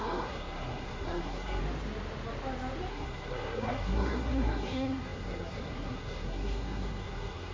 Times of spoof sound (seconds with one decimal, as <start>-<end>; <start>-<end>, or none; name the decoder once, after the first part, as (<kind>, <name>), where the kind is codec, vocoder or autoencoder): 0.0-1.6 (codec, SNAC); 2.9-7.5